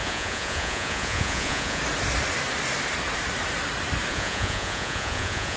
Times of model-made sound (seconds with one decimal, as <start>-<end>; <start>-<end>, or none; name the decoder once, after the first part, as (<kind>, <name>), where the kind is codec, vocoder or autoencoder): 0.0-1.8 (vocoder, Vocos); 4.1-5.6